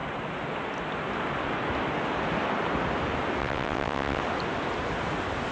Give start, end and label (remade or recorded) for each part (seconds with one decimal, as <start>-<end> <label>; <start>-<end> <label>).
0.0-3.4 recorded; 3.4-4.2 remade; 4.2-5.5 recorded